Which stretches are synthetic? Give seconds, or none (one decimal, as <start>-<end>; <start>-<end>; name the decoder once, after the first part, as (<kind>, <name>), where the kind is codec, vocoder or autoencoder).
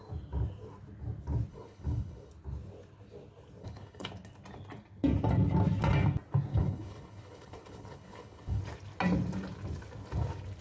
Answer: 1.5-2.3 (codec, HILCodec); 3.6-4.1; 6.5-8.6